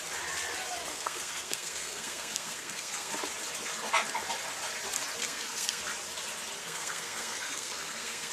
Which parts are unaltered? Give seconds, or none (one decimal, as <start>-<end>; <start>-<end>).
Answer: 0.0-0.9; 3.1-5.2; 5.8-6.6